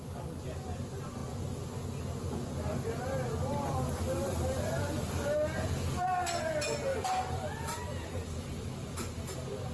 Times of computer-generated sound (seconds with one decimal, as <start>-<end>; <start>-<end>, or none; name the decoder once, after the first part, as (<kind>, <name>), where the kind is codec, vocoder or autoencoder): none

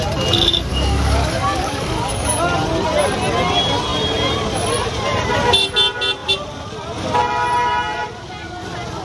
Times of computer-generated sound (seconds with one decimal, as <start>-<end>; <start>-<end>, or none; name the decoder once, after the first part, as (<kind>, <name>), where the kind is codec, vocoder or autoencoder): 0.7-2.6 (codec, DAC)

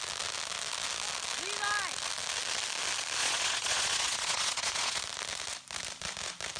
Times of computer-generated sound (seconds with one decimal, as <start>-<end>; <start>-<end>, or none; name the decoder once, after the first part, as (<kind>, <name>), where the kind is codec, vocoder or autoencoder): 3.2-5.0 (vocoder, Vocos)

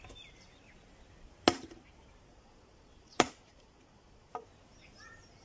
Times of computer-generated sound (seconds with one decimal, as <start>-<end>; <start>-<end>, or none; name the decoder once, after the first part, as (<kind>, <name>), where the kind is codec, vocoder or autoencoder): 2.3-4.3 (vocoder, Vocos)